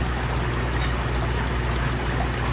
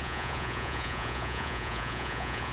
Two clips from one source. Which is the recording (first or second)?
first